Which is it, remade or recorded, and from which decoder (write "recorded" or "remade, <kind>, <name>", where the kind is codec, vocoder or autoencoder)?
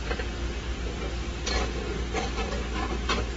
recorded